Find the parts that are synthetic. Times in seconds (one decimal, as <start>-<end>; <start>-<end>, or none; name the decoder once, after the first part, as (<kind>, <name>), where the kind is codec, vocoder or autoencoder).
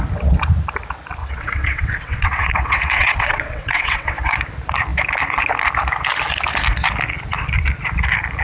1.2-4.4 (vocoder, WaveNeXt)